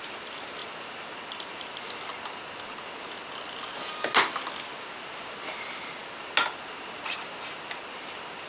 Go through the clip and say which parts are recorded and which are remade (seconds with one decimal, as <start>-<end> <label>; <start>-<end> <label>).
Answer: 0.0-8.5 recorded